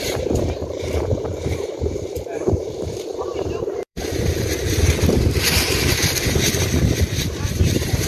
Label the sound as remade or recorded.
remade